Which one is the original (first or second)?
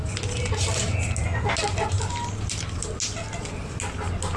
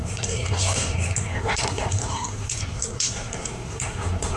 first